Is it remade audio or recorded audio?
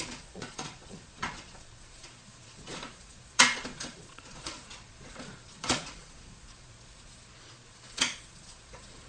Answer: remade